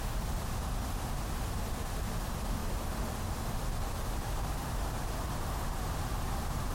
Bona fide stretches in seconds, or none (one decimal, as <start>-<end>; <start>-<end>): 0.0-2.6; 5.8-6.7